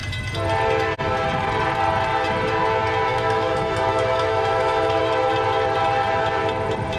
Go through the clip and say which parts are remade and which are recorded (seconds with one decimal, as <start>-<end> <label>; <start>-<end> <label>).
0.0-3.1 recorded; 3.1-5.0 remade; 5.0-7.0 recorded